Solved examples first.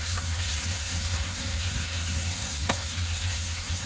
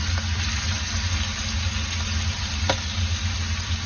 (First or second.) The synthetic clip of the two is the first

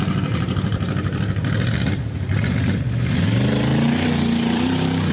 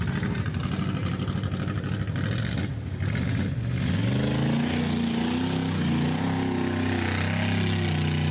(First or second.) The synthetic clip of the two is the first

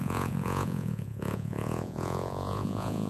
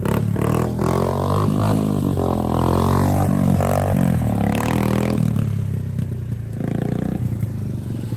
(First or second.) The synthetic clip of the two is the first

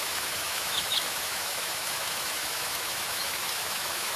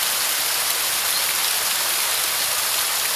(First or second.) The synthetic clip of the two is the first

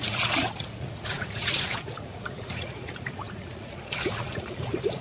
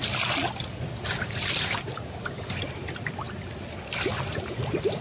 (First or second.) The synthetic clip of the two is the first